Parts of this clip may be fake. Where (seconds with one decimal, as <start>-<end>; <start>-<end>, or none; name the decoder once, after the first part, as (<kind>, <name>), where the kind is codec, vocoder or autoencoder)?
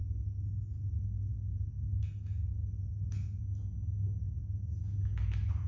0.0-3.4 (codec, SNAC); 4.2-4.8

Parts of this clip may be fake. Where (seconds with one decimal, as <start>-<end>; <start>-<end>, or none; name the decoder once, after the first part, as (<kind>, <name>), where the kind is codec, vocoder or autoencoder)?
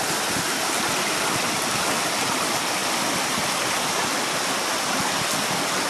none